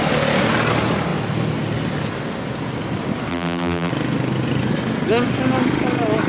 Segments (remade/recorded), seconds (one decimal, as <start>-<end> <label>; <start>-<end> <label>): 0.0-3.3 recorded; 3.3-3.9 remade; 3.9-6.3 recorded